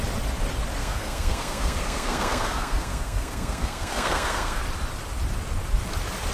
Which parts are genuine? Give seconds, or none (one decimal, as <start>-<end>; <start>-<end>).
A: 0.0-0.8; 4.6-6.3